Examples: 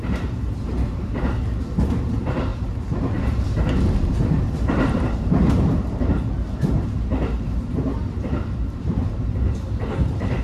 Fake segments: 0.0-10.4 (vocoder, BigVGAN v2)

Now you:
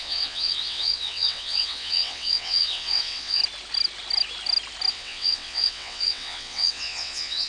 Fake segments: 0.0-3.4 (vocoder, WaveNeXt); 4.9-7.5

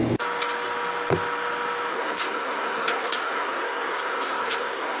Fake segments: 1.9-5.0 (codec, SNAC)

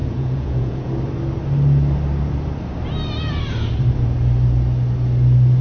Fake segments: 0.0-0.9 (vocoder, Vocos)

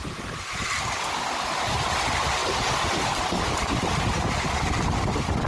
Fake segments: none

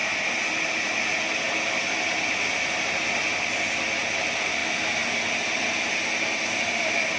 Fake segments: none

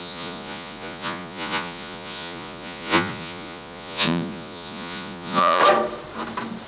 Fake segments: 0.0-5.6 (vocoder, Vocos)

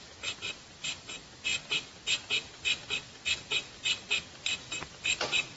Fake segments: none